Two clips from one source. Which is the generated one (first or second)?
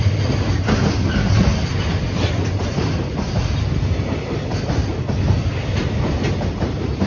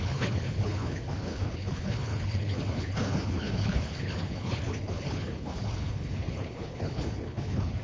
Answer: second